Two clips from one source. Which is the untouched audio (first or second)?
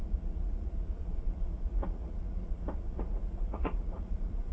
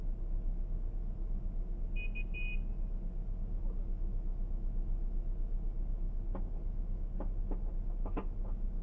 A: second